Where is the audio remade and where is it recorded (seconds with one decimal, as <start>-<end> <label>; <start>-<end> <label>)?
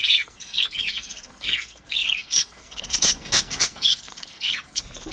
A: 0.0-5.1 remade